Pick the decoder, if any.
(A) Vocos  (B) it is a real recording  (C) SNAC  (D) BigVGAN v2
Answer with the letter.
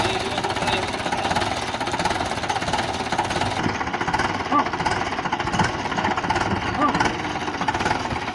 B